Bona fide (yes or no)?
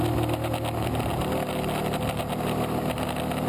yes